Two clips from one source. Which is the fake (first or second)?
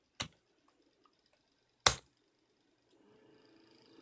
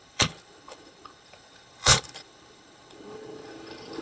second